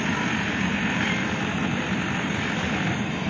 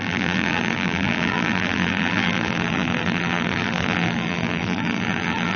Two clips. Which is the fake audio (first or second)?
second